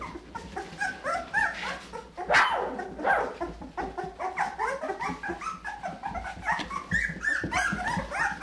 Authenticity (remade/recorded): recorded